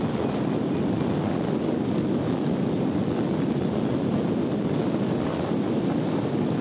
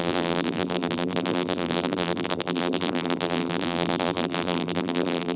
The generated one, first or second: second